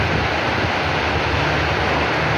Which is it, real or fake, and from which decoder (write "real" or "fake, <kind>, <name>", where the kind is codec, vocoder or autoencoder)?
real